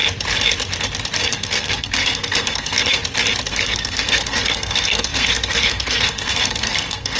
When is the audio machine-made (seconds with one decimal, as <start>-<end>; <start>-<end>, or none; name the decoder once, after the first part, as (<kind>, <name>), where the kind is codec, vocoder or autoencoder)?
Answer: 1.2-3.0 (codec, SNAC); 3.5-7.2